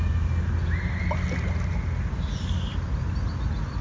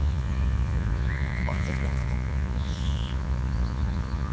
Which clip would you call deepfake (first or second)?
second